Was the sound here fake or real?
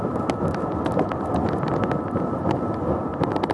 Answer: real